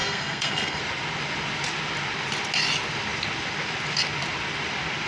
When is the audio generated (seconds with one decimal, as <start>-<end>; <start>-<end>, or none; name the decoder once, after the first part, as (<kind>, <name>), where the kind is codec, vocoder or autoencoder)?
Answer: 0.0-0.8 (codec, SNAC)